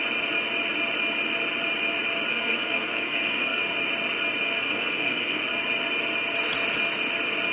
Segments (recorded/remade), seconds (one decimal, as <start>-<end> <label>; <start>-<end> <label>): 0.0-2.3 recorded; 2.3-3.6 remade; 3.6-4.6 recorded; 4.6-5.4 remade; 5.4-7.5 recorded